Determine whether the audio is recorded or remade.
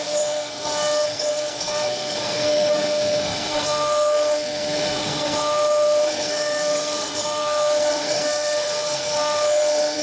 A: remade